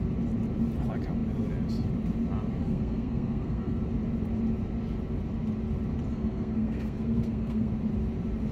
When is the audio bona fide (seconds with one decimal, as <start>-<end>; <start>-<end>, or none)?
0.0-2.6; 3.8-6.1; 7.7-8.5